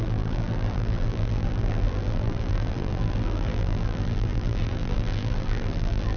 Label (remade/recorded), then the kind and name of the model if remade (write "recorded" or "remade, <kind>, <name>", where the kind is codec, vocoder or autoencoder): remade, vocoder, BigVGAN v2